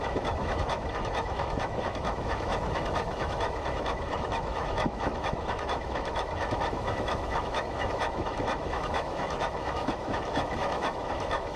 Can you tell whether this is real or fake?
fake